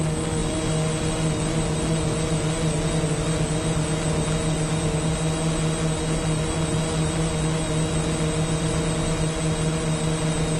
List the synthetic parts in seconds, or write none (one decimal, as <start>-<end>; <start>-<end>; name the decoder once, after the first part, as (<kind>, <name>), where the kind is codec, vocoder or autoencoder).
none